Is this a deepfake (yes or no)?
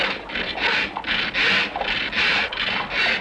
no